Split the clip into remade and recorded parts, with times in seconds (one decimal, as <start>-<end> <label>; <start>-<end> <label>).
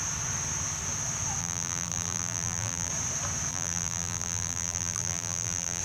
0.0-1.4 recorded; 1.4-2.9 remade; 2.9-3.5 recorded; 3.5-5.8 remade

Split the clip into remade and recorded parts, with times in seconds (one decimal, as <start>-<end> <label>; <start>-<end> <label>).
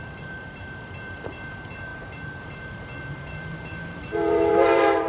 0.0-5.1 remade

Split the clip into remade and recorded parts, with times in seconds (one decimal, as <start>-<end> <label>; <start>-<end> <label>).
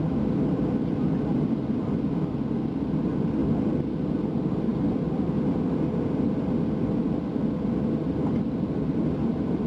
0.0-7.3 remade; 7.3-8.3 recorded; 8.3-9.7 remade